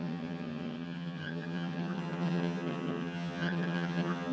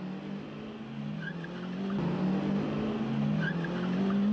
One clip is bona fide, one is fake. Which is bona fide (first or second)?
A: second